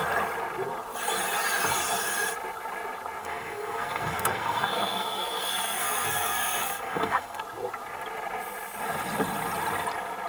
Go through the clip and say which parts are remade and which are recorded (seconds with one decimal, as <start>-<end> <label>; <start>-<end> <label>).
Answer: 0.0-3.2 recorded; 3.2-7.4 remade; 7.4-10.3 recorded